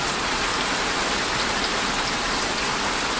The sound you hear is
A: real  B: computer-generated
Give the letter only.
A